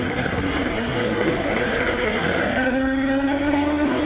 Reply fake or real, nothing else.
fake